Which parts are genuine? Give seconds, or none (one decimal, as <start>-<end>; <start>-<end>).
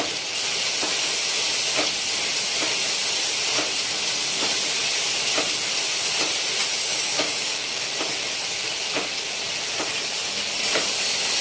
0.0-6.8; 7.9-11.4